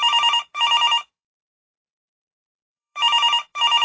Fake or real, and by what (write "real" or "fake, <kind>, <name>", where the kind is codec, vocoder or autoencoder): fake, vocoder, BigVGAN v2